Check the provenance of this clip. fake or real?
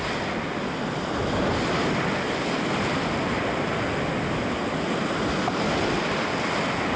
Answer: real